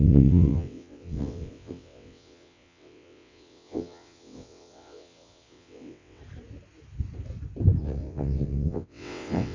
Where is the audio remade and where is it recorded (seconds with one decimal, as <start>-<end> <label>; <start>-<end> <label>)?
0.0-6.2 remade; 6.2-7.8 recorded; 7.8-9.5 remade